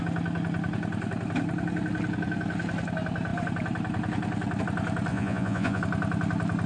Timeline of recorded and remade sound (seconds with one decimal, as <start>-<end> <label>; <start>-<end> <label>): 0.0-5.1 recorded; 5.1-5.8 remade; 5.8-6.7 recorded